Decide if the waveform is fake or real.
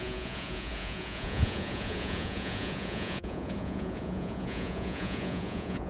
fake